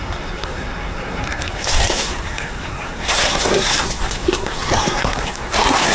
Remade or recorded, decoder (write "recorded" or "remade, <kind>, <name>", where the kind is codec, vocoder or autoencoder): remade, codec, SNAC